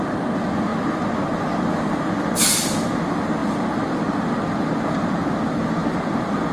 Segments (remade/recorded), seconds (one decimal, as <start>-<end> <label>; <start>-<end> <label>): 0.0-6.5 recorded